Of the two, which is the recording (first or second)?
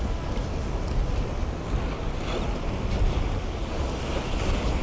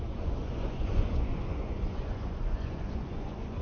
first